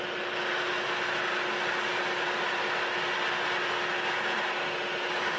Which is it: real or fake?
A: real